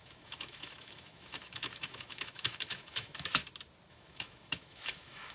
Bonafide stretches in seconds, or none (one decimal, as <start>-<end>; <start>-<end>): 3.4-3.9